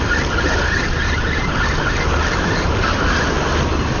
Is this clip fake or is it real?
real